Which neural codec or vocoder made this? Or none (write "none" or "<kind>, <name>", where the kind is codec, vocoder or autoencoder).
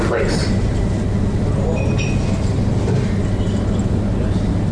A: none